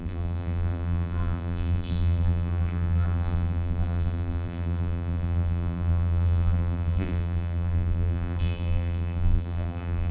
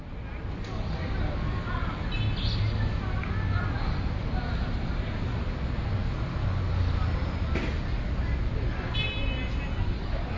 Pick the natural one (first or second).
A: second